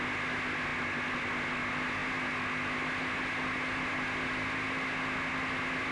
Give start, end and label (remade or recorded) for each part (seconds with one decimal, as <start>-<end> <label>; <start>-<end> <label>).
0.0-5.9 recorded